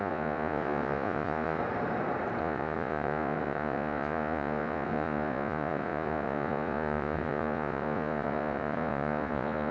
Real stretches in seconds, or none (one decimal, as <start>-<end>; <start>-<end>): 1.6-2.4